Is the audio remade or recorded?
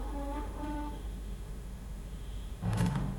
remade